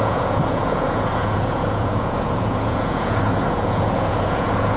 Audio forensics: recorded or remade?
remade